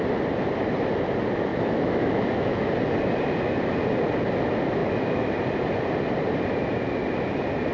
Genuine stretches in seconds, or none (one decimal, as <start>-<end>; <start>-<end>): 0.0-1.5; 2.7-4.8; 5.3-7.7